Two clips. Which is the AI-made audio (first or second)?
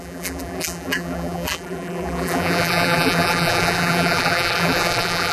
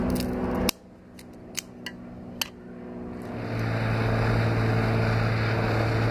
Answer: first